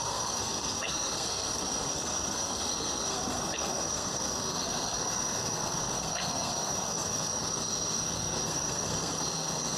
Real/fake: fake